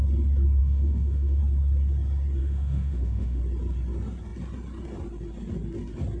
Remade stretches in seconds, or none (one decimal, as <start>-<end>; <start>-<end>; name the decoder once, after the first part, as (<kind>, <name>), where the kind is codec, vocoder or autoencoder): 0.6-1.4 (autoencoder, DAC-VAE); 2.4-3.4